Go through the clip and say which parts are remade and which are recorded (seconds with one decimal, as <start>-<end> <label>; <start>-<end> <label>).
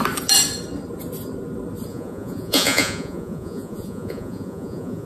0.0-1.9 recorded; 1.9-5.1 remade